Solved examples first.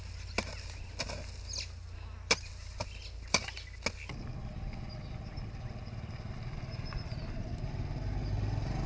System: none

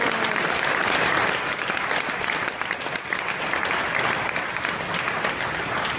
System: vocoder, BigVGAN v2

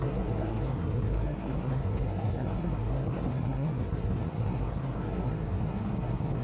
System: codec, SNAC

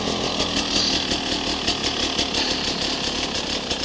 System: none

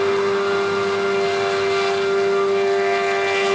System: none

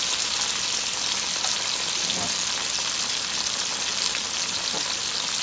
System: none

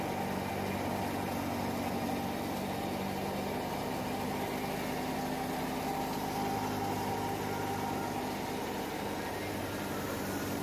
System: none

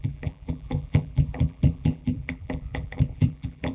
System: vocoder, BigVGAN v2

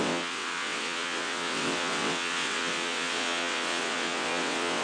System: vocoder, WaveNeXt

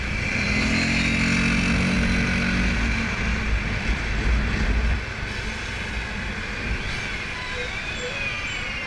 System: none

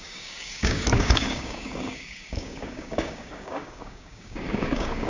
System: codec, DAC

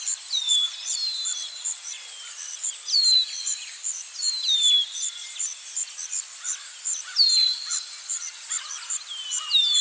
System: vocoder, BigVGAN v2